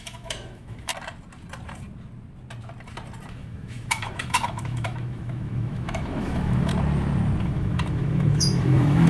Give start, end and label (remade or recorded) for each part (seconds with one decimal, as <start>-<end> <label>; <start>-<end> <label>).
0.0-0.9 remade; 0.9-3.3 recorded; 3.3-6.7 remade; 6.7-7.4 recorded; 7.4-9.1 remade